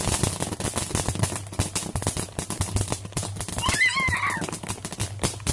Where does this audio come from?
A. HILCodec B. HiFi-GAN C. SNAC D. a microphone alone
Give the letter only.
D